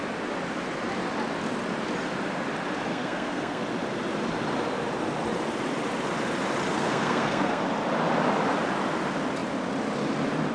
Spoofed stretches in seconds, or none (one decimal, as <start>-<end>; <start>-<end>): 2.9-3.6; 6.7-7.6